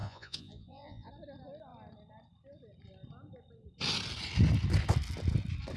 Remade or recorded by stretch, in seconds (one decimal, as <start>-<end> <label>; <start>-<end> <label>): 0.0-1.1 remade; 1.1-5.8 recorded